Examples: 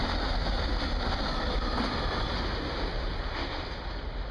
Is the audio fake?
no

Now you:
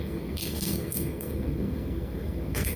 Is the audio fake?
yes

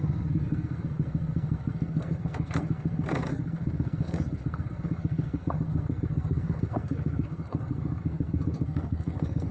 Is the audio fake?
yes